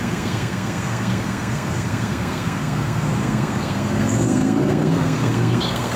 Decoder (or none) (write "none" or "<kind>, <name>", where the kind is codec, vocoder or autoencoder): codec, SNAC